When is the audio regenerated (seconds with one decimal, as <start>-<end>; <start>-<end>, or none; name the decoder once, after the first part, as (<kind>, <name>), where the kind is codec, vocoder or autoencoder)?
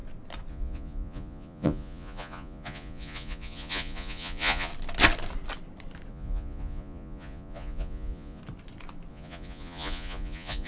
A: 0.5-4.7 (vocoder, Vocos); 6.1-8.4; 9.1-10.7